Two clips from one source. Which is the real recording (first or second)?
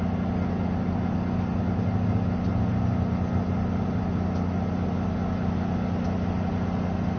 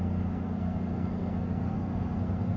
first